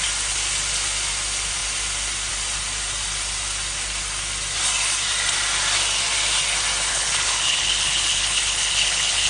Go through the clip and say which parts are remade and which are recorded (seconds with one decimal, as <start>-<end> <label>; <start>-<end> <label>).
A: 0.0-6.9 recorded; 6.9-9.3 remade